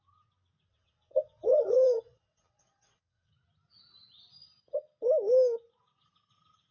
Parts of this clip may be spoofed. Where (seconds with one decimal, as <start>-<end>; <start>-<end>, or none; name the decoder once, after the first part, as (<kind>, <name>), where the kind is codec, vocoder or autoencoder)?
0.7-3.3 (vocoder, WaveNeXt)